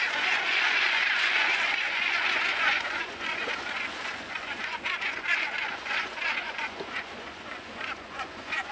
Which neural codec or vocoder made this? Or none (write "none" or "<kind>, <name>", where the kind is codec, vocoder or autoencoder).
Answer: vocoder, Vocos